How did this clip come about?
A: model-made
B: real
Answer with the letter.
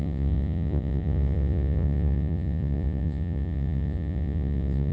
A